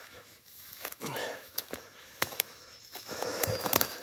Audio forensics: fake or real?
fake